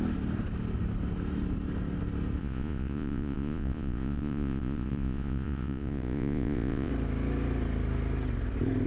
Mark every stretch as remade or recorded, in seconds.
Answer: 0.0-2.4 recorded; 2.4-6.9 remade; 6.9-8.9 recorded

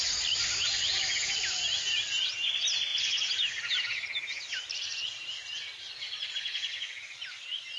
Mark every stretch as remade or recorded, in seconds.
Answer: 0.0-7.8 recorded

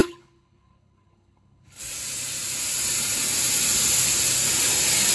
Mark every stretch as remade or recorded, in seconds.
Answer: 0.0-1.8 remade; 1.8-5.1 recorded

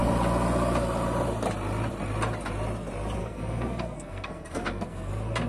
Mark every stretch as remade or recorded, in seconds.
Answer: 0.0-3.2 recorded; 3.2-5.1 remade; 5.1-5.5 recorded